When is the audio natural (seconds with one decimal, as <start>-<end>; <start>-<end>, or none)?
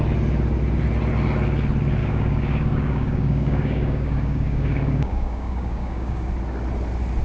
0.0-2.0; 6.3-7.2